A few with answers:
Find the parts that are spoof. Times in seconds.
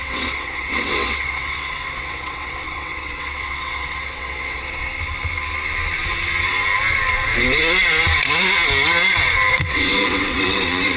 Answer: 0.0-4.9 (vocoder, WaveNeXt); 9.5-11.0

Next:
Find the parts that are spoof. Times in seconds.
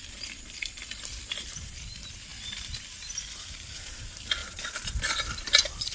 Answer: 0.0-5.9 (vocoder, BigVGAN v2)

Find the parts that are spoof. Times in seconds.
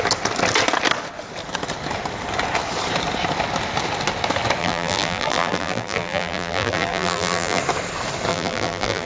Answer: 4.6-7.6 (vocoder, BigVGAN v2); 8.3-9.1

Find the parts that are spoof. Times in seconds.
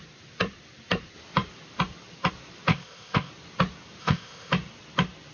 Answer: 2.7-3.3 (codec, ZipCodec); 4.0-4.5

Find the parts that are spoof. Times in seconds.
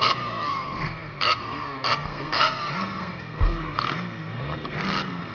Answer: 0.0-5.3 (codec, SNAC)